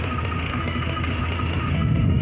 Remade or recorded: remade